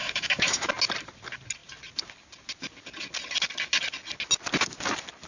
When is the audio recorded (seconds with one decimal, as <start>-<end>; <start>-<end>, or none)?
0.7-5.3